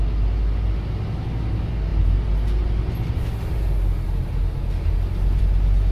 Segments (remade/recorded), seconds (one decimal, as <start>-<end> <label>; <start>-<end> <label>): 0.0-5.9 recorded